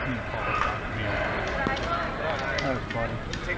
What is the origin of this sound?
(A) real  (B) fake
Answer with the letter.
A